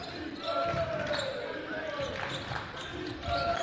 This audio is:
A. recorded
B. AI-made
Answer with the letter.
A